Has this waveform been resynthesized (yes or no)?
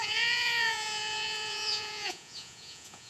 yes